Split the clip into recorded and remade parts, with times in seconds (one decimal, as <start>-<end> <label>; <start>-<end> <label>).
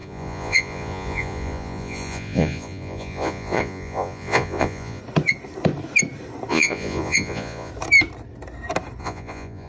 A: 0.0-5.0 remade; 5.0-6.5 recorded; 6.5-7.7 remade; 7.7-9.0 recorded; 9.0-9.7 remade